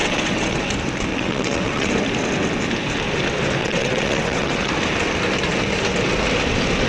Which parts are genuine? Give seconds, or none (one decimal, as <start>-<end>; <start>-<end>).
0.6-1.1; 1.9-3.6; 4.7-6.9